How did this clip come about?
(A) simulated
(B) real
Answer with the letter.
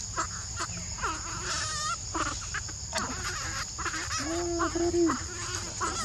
B